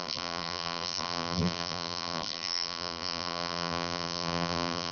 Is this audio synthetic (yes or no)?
yes